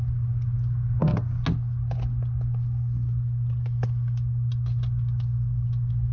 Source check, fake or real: real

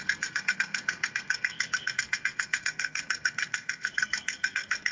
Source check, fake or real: fake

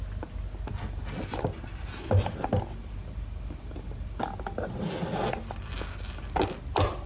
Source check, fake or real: real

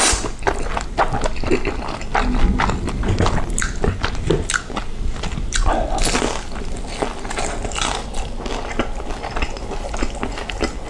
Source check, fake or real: real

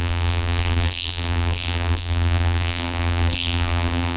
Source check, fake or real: fake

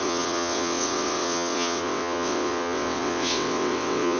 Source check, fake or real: fake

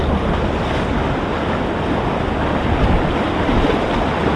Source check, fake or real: real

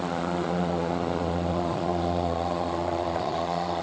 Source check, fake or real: fake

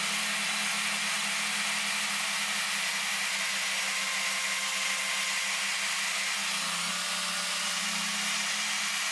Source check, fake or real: real